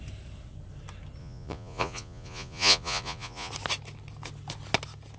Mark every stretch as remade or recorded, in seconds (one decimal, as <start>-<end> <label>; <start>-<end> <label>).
0.0-1.2 recorded; 1.2-3.5 remade; 3.5-5.2 recorded